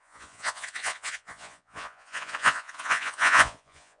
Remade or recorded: remade